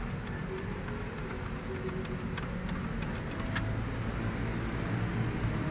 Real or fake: real